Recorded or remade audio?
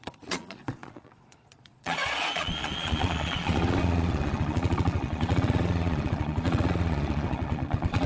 remade